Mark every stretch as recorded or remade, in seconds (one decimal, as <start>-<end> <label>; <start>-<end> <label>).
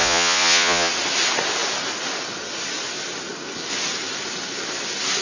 0.0-0.9 remade; 0.9-5.2 recorded